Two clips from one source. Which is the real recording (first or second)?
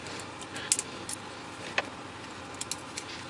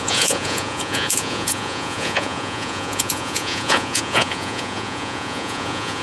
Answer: first